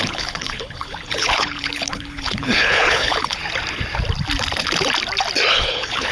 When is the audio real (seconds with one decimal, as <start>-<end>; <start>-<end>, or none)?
3.4-5.5